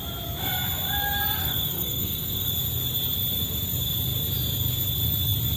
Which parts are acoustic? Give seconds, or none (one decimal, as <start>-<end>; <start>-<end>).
0.0-1.4; 2.5-5.6